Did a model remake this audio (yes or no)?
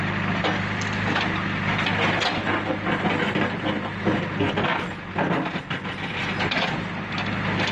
no